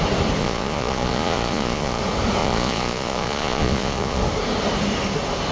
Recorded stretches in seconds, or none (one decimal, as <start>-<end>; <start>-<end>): 0.0-0.4; 2.0-2.4; 4.2-5.5